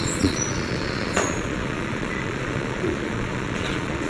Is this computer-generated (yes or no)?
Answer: yes